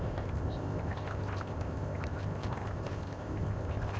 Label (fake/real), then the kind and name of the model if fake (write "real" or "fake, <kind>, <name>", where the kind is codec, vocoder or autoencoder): fake, codec, ZipCodec